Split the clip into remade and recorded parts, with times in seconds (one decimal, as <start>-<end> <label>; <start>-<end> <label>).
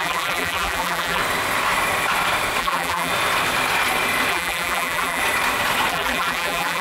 0.0-1.2 remade; 1.2-2.6 recorded; 2.6-3.1 remade; 3.1-4.3 recorded; 4.3-5.2 remade; 5.2-5.9 recorded; 5.9-6.8 remade